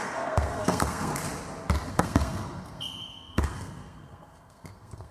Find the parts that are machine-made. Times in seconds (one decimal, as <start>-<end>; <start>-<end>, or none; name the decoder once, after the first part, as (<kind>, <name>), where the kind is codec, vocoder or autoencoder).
0.0-1.1 (codec, SNAC); 1.9-5.1